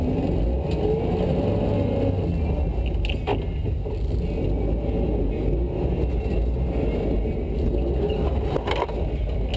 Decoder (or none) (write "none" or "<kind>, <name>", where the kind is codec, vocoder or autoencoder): none